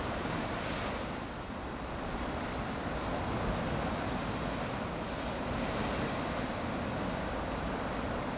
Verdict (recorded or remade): recorded